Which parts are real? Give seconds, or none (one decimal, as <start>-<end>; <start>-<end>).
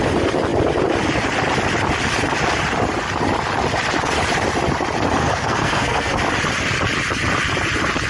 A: 0.0-5.2; 6.2-8.1